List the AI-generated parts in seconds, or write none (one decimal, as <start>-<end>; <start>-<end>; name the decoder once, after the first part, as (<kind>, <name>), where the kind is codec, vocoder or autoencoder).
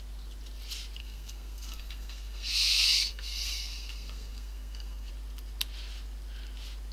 1.0-5.1 (codec, SNAC)